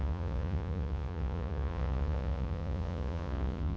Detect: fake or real fake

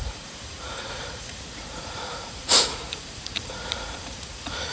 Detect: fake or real fake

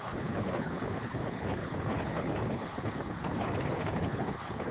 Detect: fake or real fake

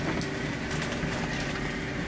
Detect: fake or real real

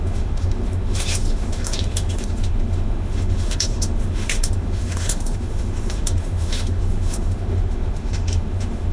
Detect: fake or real fake